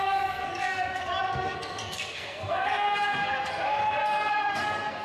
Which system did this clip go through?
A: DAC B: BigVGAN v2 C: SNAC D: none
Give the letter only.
C